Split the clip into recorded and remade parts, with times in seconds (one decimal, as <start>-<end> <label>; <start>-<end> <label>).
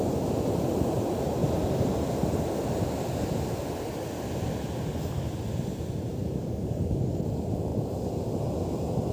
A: 0.0-6.1 recorded; 6.1-7.2 remade; 7.2-9.1 recorded